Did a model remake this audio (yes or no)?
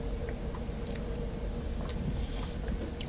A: no